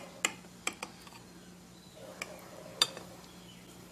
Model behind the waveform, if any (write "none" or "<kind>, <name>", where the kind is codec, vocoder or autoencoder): none